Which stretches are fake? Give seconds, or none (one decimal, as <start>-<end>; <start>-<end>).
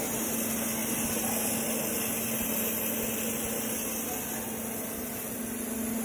none